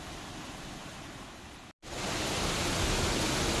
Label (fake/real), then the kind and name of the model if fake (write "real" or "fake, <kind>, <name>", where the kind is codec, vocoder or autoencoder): real